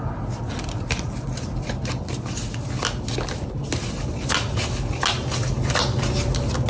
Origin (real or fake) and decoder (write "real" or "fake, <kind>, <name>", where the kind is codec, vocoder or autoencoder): real